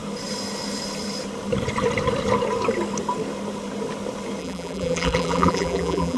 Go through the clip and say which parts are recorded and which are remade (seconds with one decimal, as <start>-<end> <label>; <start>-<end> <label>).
0.0-4.4 recorded; 4.4-6.2 remade